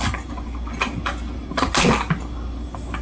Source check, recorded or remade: recorded